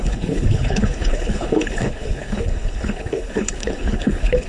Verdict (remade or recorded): remade